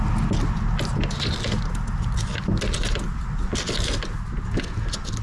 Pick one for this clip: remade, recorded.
recorded